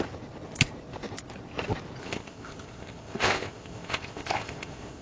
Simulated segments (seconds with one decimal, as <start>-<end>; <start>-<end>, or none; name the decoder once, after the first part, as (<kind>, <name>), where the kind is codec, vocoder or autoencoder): 2.0-5.0 (codec, ZipCodec)